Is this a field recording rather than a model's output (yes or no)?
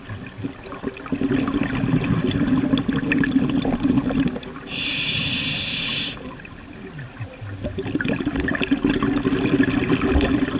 yes